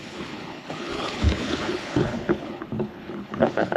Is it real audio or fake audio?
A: fake